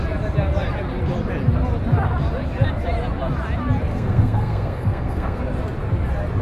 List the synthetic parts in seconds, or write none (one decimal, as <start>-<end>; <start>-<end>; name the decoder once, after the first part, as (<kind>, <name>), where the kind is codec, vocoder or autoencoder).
3.9-5.4 (codec, SNAC)